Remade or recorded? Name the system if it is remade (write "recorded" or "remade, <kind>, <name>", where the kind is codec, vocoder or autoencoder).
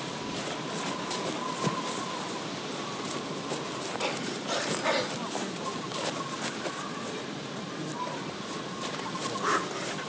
recorded